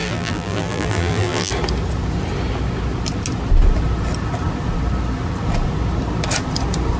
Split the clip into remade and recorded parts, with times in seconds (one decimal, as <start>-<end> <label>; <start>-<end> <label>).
0.0-1.5 remade; 1.5-7.0 recorded